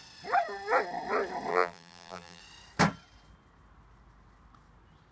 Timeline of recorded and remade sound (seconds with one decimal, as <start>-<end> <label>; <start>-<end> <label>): 0.0-1.5 recorded; 1.5-2.4 remade; 2.4-5.1 recorded